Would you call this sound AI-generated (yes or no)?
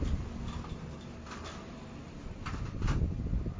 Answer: no